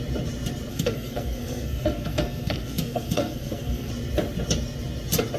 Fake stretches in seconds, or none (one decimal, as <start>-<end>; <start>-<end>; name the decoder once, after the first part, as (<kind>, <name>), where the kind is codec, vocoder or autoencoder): 0.7-3.9 (codec, SNAC)